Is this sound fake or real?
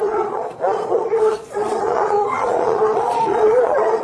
fake